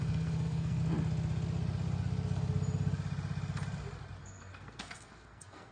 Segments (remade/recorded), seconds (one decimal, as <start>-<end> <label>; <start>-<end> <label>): 0.0-0.8 remade; 0.8-4.2 recorded; 4.2-5.7 remade